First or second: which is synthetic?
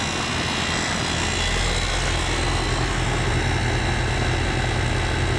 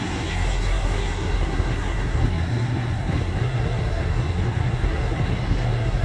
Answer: second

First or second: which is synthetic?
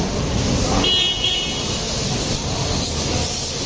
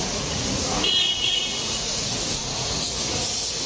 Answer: second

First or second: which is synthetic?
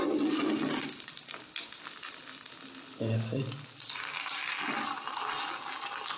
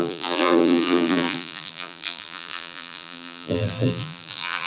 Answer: second